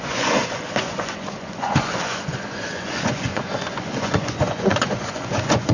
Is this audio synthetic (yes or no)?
yes